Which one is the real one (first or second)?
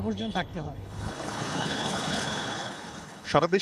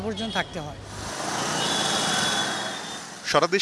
second